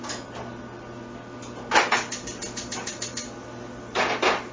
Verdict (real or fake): real